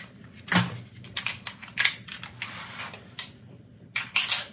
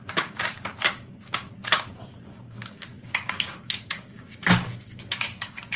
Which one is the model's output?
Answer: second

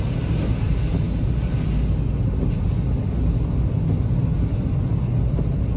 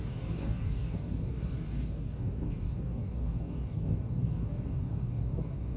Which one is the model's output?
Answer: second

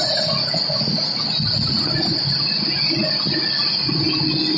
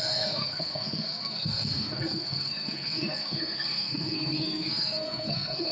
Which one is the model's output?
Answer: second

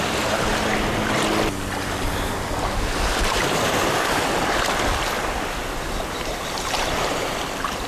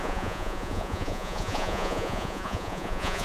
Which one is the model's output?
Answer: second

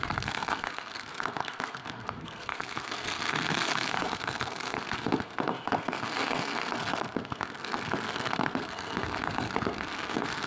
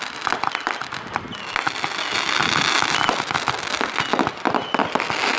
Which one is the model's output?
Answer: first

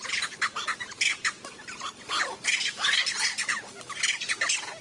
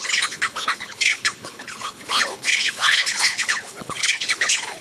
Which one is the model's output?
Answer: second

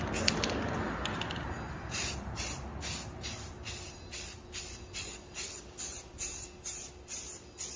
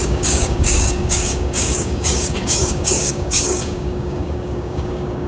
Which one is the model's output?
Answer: second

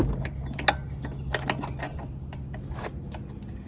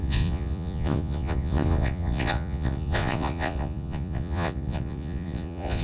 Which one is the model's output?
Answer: second